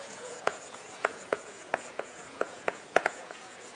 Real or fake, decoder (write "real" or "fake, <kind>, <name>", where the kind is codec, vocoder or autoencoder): fake, vocoder, Vocos